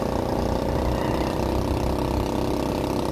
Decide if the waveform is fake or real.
real